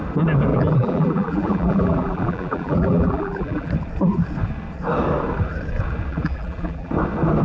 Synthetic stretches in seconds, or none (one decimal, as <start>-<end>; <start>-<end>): 0.5-3.7; 6.1-6.9